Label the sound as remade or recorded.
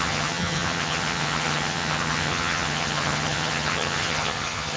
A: remade